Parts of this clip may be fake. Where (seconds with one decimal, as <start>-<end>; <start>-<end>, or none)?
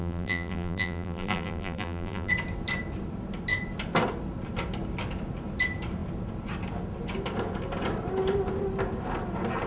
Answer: 0.0-2.3